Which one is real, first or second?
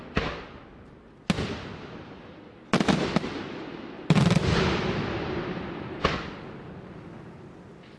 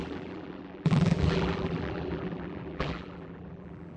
first